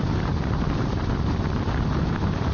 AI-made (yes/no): no